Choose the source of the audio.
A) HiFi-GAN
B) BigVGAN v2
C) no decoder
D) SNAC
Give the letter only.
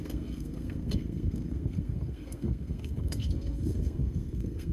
D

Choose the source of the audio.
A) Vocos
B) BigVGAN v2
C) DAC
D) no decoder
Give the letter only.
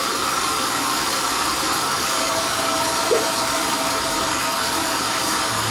C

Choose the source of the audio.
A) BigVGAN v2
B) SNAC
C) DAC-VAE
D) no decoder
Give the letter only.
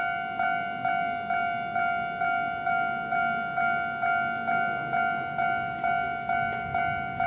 D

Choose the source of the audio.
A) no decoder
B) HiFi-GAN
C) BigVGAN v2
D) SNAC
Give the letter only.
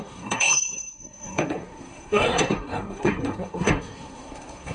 D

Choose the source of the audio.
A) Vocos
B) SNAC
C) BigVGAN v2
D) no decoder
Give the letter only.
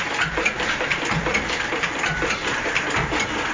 C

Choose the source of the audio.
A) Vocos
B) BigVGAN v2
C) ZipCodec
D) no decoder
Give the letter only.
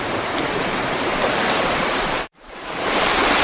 B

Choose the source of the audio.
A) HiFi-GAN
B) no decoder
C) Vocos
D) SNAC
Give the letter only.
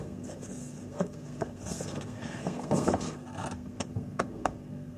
D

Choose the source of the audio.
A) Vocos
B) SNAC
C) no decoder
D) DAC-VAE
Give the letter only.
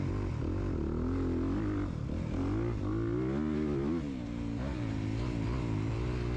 C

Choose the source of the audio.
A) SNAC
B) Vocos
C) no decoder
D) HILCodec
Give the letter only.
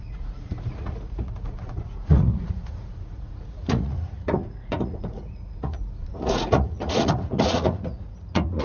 B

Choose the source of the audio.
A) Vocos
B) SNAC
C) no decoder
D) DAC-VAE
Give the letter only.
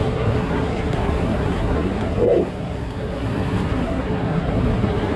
B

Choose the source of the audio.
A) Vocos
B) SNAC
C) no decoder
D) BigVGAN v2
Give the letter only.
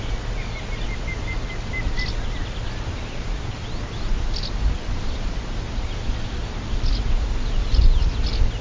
C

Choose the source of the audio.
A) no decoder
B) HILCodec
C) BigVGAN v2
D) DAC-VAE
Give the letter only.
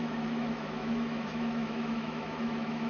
D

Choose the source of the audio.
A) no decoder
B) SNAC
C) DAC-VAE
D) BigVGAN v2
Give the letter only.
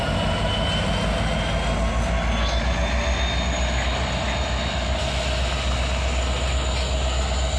A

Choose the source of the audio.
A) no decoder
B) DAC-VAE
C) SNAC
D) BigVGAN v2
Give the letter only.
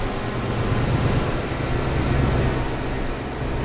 A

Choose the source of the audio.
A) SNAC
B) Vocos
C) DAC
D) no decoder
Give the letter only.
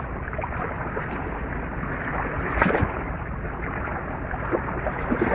D